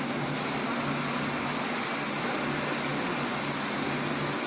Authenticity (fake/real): real